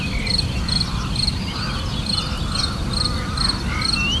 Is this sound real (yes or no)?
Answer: yes